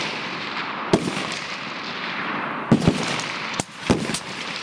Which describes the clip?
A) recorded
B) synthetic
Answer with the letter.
B